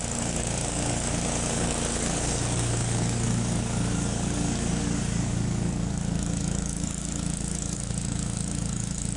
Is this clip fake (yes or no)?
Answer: yes